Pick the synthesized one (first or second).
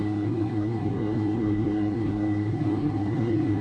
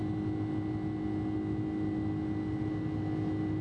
first